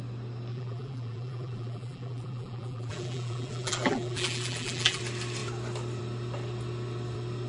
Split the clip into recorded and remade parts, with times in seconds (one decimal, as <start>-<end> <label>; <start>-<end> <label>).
0.0-0.5 recorded; 0.5-5.0 remade; 5.0-7.5 recorded